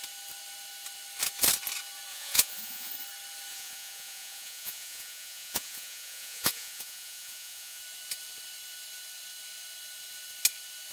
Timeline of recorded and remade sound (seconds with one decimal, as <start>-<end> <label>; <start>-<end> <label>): 0.0-2.1 recorded; 2.1-2.9 remade; 2.9-3.5 recorded; 3.5-7.8 remade; 7.8-10.9 recorded